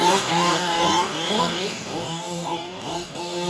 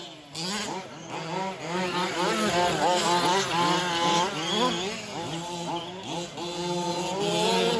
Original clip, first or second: second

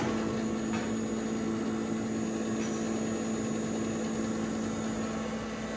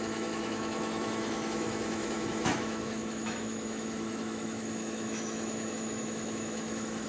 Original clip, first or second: first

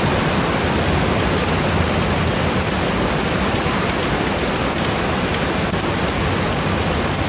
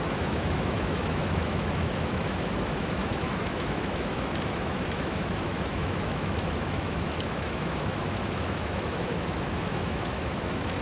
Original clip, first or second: first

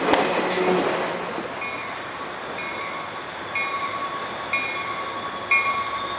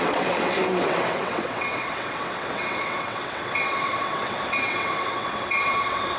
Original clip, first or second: first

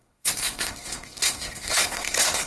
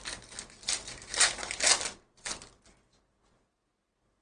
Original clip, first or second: second